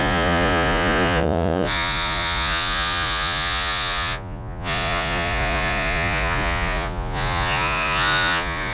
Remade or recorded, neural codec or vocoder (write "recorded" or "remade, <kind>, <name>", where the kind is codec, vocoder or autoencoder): remade, vocoder, Vocos